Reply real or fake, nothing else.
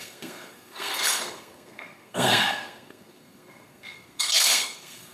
fake